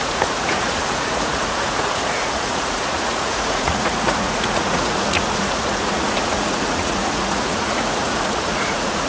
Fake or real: fake